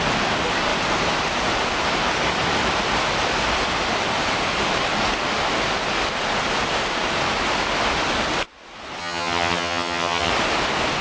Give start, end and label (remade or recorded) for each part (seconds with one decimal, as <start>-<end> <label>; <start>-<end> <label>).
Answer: 0.0-9.0 recorded; 9.0-10.3 remade; 10.3-11.0 recorded